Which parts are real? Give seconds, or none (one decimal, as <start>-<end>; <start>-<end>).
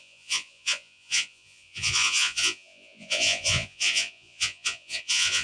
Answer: none